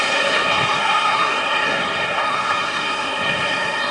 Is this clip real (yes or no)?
no